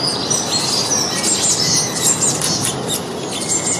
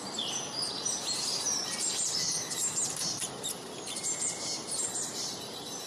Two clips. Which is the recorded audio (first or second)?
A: first